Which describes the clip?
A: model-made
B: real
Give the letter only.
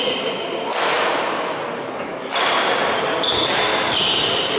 B